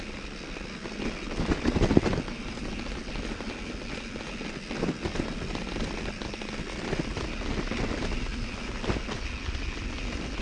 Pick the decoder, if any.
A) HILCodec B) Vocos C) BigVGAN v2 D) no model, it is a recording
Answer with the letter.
D